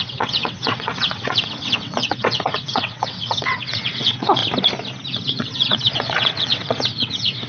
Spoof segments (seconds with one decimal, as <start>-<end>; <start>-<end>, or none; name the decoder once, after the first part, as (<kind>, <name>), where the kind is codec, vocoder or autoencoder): 0.0-4.4 (vocoder, WaveNeXt); 5.1-7.5